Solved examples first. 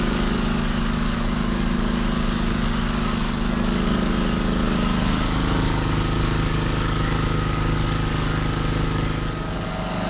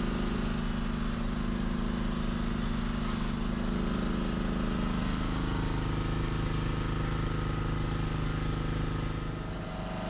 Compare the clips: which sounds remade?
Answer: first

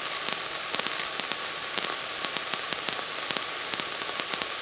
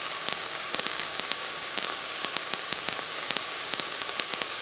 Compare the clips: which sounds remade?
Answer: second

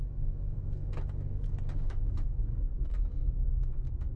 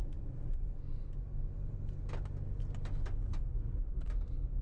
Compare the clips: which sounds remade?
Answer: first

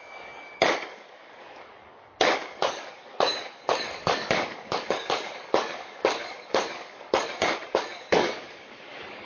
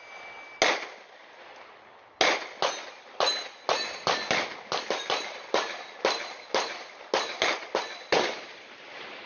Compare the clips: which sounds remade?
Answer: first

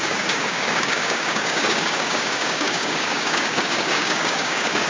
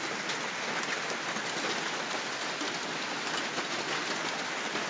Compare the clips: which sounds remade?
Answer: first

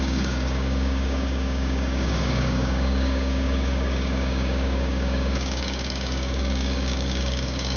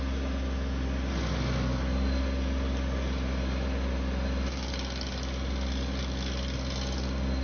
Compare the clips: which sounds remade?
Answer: first